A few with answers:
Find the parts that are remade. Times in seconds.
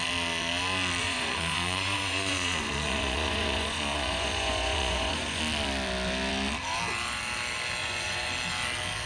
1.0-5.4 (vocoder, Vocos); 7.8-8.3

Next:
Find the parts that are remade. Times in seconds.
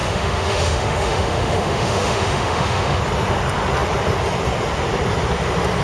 0.0-3.0 (autoencoder, DAC-VAE)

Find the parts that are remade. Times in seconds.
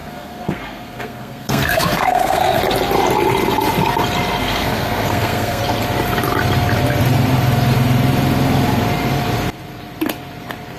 0.0-2.6 (codec, SNAC); 4.4-5.6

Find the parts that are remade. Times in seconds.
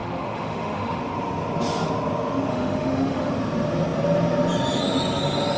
0.0-1.0 (autoencoder, DAC-VAE); 2.5-3.3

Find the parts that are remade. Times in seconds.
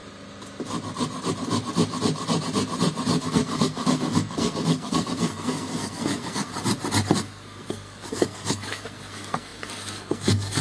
3.2-6.5 (codec, SNAC); 7.1-10.6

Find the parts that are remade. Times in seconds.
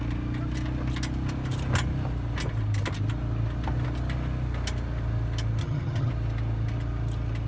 5.6-6.1 (vocoder, HiFi-GAN)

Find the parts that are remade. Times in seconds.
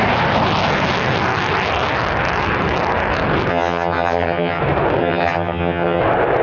3.5-4.6 (vocoder, HiFi-GAN); 5.0-6.0